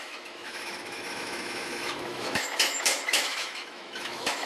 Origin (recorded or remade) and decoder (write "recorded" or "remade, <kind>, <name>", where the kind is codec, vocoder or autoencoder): remade, autoencoder, DAC-VAE